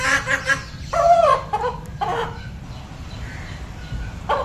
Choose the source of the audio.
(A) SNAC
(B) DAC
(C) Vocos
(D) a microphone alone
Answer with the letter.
D